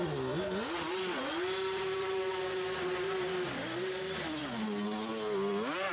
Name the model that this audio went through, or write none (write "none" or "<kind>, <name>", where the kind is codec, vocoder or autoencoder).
none